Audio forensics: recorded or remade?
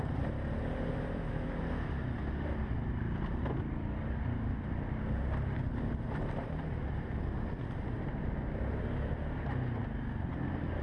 recorded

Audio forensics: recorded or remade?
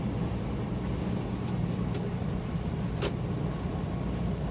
recorded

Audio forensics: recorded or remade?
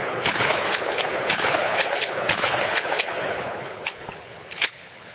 remade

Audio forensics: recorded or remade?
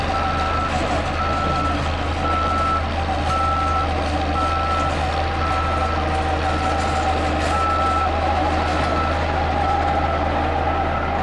recorded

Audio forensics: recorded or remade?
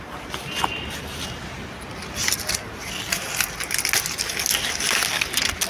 recorded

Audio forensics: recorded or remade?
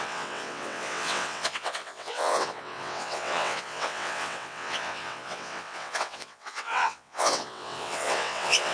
remade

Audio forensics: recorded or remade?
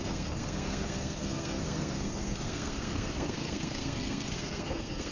remade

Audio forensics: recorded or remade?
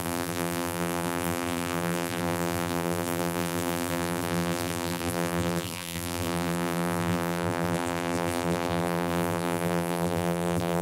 remade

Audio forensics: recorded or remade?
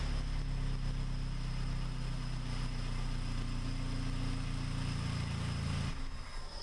recorded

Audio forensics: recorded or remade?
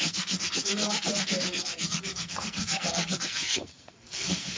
remade